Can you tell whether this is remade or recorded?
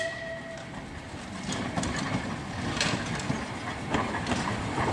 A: recorded